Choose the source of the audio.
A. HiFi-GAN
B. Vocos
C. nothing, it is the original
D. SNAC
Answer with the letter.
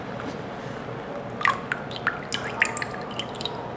C